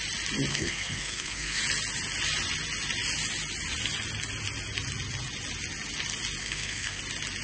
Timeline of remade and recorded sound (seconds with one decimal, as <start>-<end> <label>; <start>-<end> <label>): 0.0-0.5 recorded; 0.5-1.6 remade; 1.6-6.4 recorded; 6.4-7.0 remade; 7.0-7.4 recorded